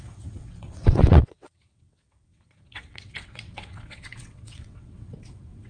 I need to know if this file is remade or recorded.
remade